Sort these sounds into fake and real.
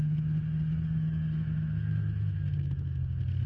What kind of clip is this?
fake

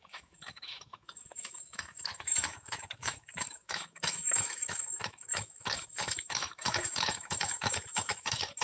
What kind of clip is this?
fake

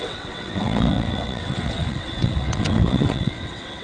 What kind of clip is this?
fake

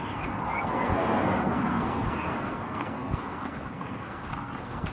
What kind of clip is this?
fake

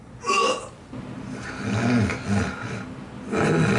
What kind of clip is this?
real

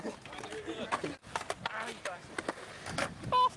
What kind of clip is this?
real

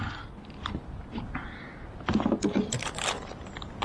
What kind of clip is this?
real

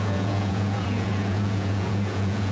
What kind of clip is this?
fake